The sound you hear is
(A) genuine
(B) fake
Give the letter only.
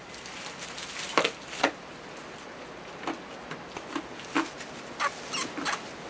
A